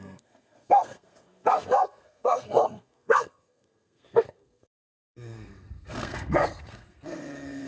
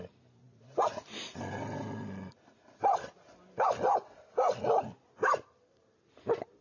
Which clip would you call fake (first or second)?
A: first